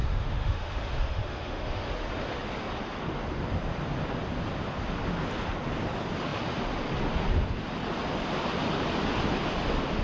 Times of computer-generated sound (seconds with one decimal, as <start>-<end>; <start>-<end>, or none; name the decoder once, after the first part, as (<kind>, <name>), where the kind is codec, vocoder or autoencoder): 0.0-1.9 (autoencoder, DAC-VAE)